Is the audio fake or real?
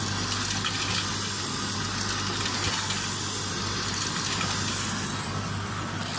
real